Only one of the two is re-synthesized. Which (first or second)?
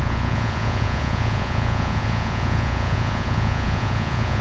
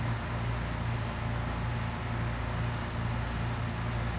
first